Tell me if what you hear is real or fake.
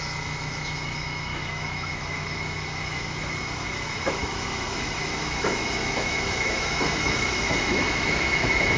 fake